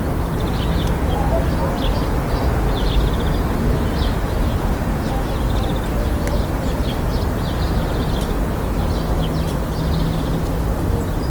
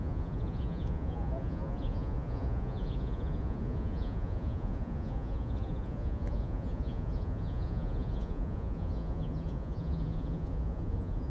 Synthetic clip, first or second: second